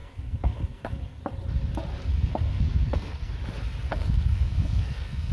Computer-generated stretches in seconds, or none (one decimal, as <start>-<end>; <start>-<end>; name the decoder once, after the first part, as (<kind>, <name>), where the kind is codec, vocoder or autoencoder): 0.0-1.2 (codec, SNAC); 2.1-3.3; 3.9-5.3